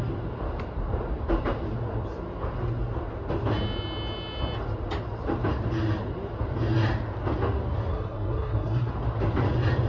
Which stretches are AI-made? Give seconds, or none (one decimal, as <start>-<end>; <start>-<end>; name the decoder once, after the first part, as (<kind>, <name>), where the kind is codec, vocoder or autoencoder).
7.9-8.9 (codec, SNAC)